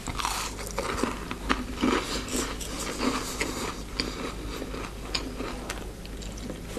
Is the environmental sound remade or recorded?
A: recorded